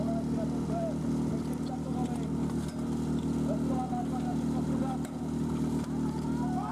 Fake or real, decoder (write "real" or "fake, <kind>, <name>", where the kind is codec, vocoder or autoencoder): real